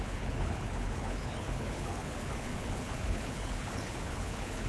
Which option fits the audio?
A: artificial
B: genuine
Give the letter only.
A